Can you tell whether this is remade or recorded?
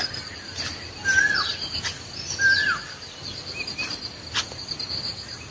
recorded